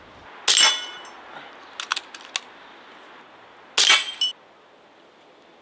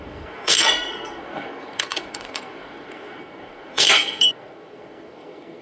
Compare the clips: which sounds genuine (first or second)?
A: first